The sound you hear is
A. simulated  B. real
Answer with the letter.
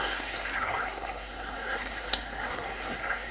A